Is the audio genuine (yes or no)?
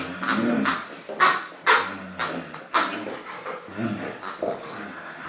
no